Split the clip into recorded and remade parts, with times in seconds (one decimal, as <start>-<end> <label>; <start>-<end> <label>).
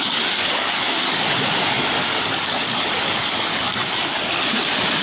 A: 0.0-3.7 remade; 3.7-5.0 recorded